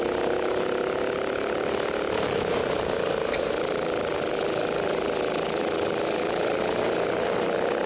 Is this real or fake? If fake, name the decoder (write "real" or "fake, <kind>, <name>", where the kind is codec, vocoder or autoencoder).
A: real